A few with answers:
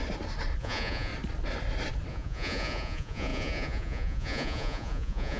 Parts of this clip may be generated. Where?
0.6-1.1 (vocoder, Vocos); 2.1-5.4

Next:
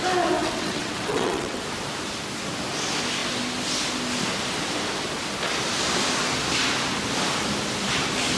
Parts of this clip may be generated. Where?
0.4-1.6 (vocoder, WaveNeXt)